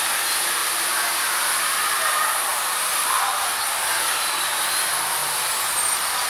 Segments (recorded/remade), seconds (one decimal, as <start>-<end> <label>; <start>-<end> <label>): 0.0-2.5 recorded; 2.5-3.5 remade; 3.5-6.3 recorded